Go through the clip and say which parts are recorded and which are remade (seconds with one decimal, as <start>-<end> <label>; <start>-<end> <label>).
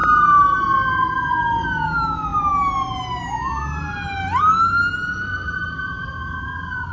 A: 0.0-6.1 recorded; 6.1-6.9 remade